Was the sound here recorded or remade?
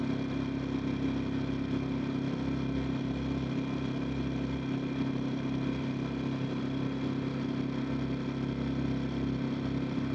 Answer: recorded